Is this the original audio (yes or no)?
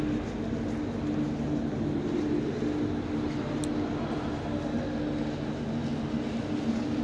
yes